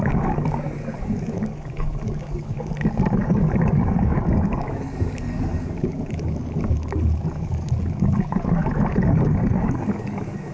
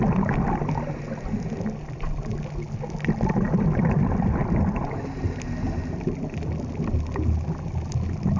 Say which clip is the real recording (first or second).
second